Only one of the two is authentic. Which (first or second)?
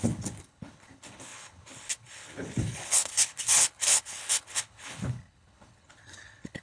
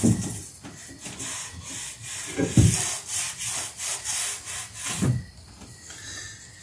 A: second